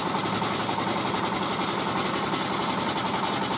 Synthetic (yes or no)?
yes